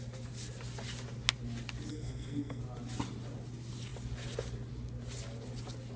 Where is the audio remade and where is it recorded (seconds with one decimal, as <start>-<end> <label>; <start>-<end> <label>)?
0.0-1.9 recorded; 1.9-2.6 remade; 2.6-6.0 recorded